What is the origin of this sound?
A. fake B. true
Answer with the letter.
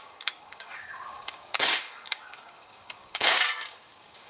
A